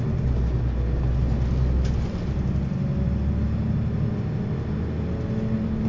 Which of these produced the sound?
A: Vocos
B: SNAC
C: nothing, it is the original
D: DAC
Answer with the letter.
C